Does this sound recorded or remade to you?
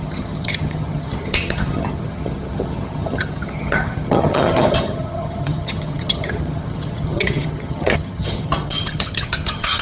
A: remade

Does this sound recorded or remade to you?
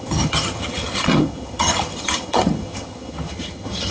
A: remade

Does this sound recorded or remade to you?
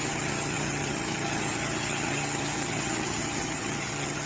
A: remade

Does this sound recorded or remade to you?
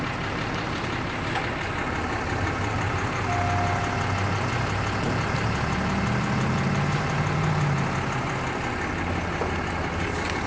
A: recorded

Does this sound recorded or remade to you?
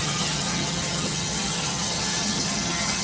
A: remade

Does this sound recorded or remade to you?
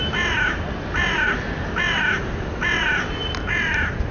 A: recorded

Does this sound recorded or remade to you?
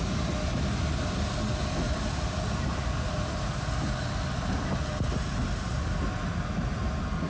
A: recorded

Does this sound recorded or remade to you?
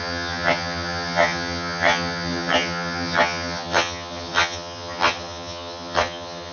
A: remade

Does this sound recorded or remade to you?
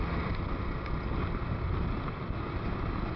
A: recorded